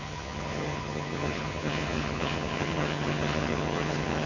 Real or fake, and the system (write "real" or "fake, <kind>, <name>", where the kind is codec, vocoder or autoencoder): fake, vocoder, HiFi-GAN